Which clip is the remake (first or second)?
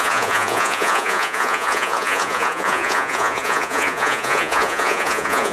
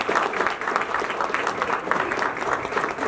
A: first